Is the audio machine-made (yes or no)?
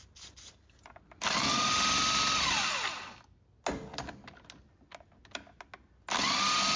no